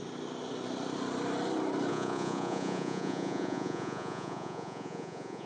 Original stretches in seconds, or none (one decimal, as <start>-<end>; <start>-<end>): 0.0-1.9